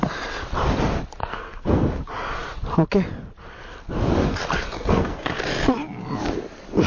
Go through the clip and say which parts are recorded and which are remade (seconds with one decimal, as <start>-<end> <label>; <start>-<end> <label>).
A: 0.0-1.2 recorded; 1.2-2.0 remade; 2.0-4.2 recorded; 4.2-5.4 remade; 5.4-6.9 recorded